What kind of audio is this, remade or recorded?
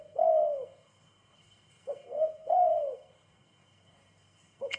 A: remade